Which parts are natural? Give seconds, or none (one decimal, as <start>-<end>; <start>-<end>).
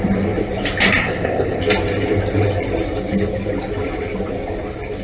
0.0-1.0; 1.6-5.0